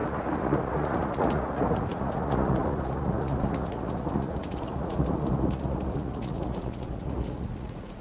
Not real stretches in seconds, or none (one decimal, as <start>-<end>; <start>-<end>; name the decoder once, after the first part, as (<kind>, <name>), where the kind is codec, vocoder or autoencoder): 0.0-8.0 (vocoder, Vocos)